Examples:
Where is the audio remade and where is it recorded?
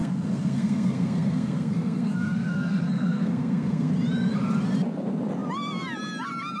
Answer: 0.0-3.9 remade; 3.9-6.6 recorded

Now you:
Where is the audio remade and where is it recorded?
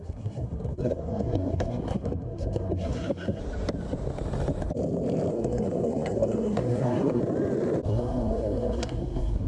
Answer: 0.0-3.4 remade; 3.4-5.3 recorded; 5.3-7.2 remade; 7.2-7.9 recorded; 7.9-9.5 remade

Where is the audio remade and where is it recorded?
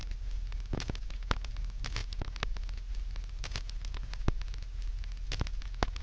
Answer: 0.0-6.0 recorded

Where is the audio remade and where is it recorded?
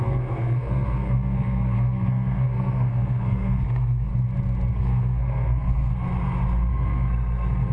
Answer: 0.0-4.1 remade; 4.1-4.7 recorded; 4.7-5.9 remade; 5.9-6.7 recorded; 6.7-7.7 remade